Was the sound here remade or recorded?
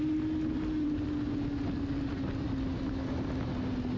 recorded